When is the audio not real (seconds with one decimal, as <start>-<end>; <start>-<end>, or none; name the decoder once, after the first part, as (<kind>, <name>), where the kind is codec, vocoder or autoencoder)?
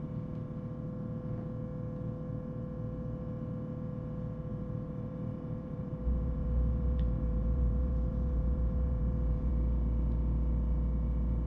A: 4.5-9.5 (vocoder, BigVGAN v2)